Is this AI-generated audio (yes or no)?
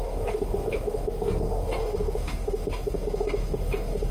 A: yes